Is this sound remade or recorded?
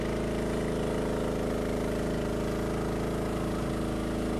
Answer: recorded